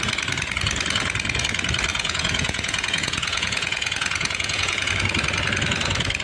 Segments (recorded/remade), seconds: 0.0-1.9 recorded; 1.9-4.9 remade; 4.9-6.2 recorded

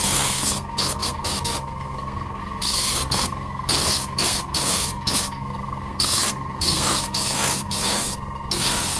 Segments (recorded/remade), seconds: 0.0-9.0 remade

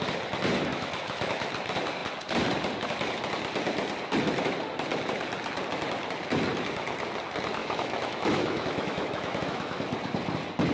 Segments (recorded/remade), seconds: 0.0-0.7 recorded; 0.7-1.5 remade; 1.5-7.6 recorded; 7.6-9.8 remade; 9.8-10.7 recorded